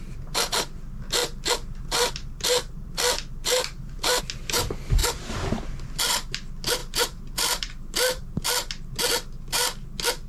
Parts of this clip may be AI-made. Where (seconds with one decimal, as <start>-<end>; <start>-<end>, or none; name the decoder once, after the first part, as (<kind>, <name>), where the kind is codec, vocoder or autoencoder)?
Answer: 1.2-4.2 (vocoder, BigVGAN v2); 5.0-5.5; 6.8-8.4